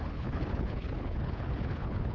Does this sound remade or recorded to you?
remade